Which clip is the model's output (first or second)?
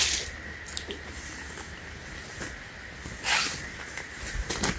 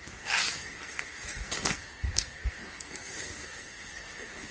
second